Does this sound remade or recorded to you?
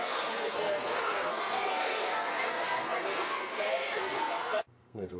remade